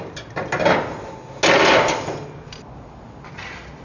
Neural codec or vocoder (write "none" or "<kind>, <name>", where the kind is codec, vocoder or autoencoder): none